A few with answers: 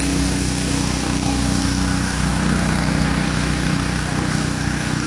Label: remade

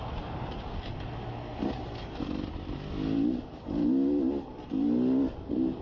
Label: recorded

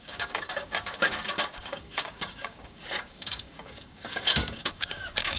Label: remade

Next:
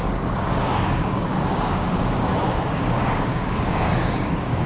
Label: remade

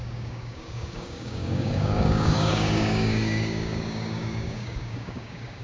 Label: remade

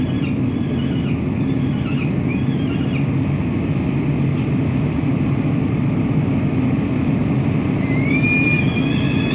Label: recorded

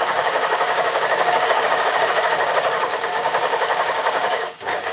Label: remade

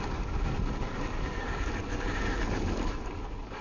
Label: remade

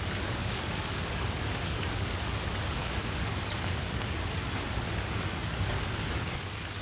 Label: remade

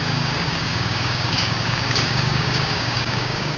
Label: remade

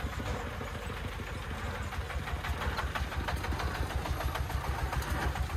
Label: recorded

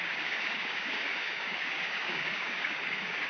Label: remade